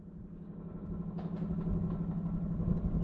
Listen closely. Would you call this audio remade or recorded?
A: recorded